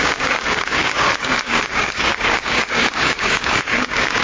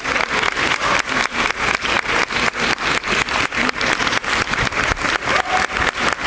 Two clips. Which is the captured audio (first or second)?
second